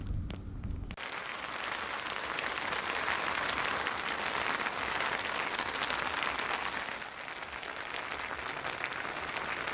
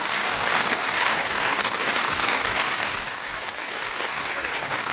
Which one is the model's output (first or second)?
second